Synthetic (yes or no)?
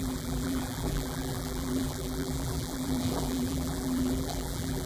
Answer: yes